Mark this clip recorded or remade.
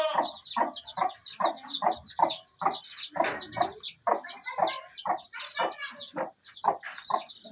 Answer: recorded